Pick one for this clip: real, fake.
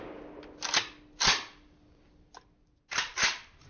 real